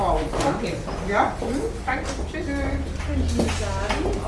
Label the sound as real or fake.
real